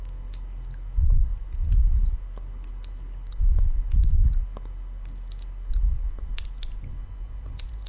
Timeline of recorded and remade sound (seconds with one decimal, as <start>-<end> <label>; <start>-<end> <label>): 0.0-7.0 recorded; 7.0-7.9 remade